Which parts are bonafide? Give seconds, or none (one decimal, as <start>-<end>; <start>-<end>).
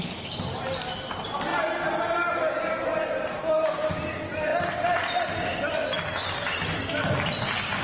0.0-7.8